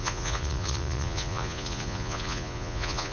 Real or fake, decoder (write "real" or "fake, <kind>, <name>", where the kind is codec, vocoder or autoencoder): fake, vocoder, Vocos